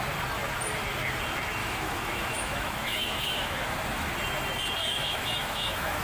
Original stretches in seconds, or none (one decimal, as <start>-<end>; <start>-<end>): 0.0-1.6; 4.1-4.8